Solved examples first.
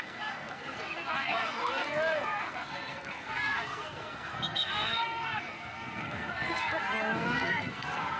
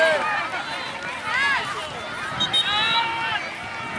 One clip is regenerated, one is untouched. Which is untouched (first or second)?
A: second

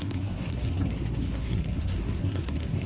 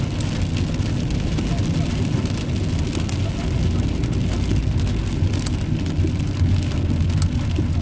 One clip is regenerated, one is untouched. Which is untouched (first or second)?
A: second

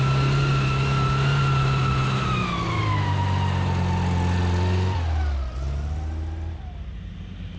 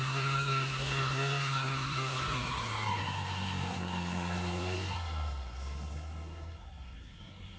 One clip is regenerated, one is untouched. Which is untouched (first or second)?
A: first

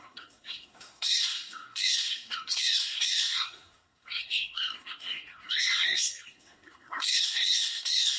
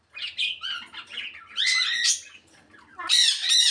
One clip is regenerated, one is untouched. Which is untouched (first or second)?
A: second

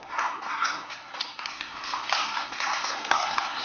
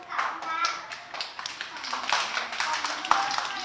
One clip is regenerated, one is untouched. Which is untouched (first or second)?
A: second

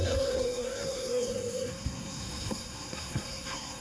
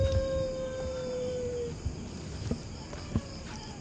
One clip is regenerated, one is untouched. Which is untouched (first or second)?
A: second